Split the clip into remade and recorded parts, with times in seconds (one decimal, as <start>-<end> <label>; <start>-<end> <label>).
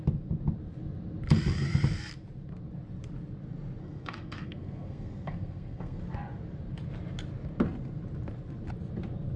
0.0-3.8 recorded; 3.8-6.0 remade; 6.0-9.4 recorded